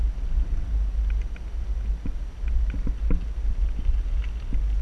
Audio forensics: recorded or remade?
recorded